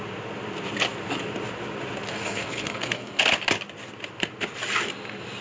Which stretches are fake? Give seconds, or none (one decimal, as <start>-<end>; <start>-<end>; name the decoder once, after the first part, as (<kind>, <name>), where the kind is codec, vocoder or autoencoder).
2.1-3.2 (codec, SNAC)